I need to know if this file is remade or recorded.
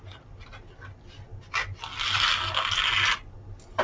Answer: recorded